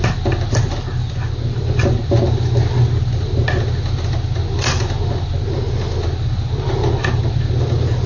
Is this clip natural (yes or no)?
yes